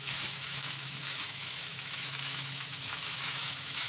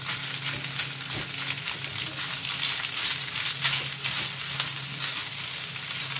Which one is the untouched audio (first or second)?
second